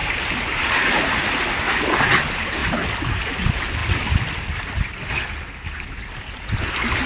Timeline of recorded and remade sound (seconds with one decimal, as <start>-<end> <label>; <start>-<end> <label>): 0.0-7.1 recorded